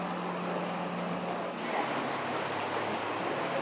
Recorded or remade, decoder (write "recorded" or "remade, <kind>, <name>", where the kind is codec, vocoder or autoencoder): recorded